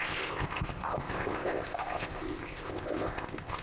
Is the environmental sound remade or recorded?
remade